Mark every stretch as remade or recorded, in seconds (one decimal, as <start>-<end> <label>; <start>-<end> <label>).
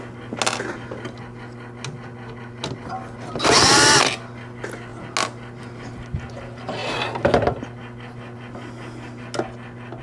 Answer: 0.0-10.0 recorded